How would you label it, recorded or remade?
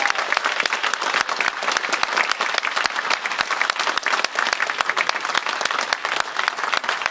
recorded